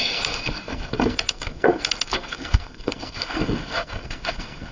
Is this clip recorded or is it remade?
remade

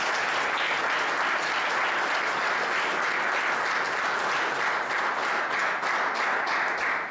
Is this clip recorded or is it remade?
recorded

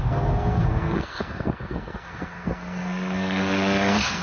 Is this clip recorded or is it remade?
remade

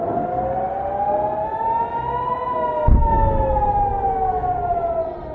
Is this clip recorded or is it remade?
recorded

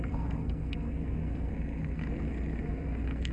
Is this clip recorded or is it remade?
remade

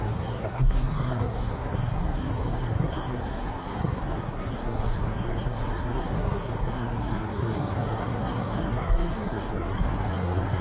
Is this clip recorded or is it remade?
remade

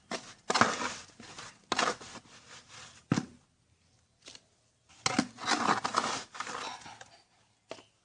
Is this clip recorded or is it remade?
recorded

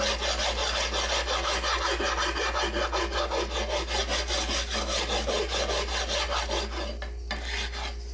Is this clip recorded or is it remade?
recorded